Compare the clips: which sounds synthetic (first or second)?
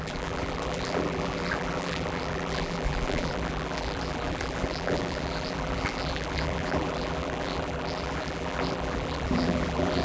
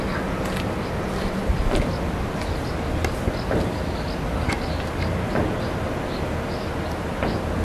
first